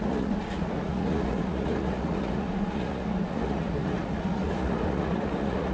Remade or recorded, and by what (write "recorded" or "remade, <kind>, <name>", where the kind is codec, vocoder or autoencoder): remade, vocoder, Vocos